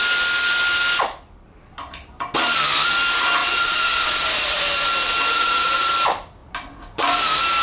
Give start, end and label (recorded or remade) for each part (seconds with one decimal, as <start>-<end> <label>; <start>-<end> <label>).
0.0-3.4 recorded; 3.4-4.6 remade; 4.6-5.3 recorded; 5.3-5.9 remade; 5.9-7.6 recorded